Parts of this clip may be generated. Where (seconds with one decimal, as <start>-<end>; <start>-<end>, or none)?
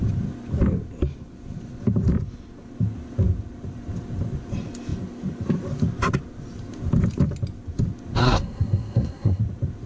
8.2-9.4